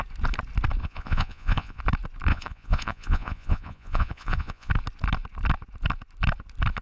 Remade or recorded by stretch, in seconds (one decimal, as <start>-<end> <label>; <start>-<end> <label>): 0.0-0.8 recorded; 0.8-1.8 remade; 1.8-2.3 recorded; 2.3-4.7 remade; 4.7-6.8 recorded